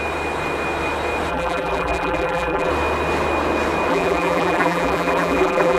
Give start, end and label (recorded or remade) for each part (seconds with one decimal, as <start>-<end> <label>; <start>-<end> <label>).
0.0-1.3 recorded; 1.3-2.7 remade; 2.7-3.9 recorded; 3.9-5.8 remade